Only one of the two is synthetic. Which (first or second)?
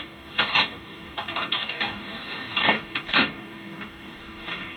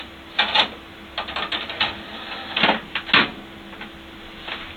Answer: first